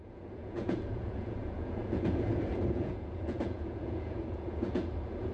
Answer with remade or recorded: remade